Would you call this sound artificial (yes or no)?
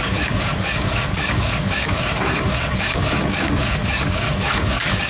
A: yes